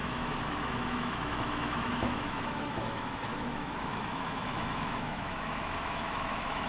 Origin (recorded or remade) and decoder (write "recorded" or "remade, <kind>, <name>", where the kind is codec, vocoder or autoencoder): remade, autoencoder, DAC-VAE